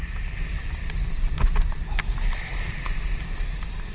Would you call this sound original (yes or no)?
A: yes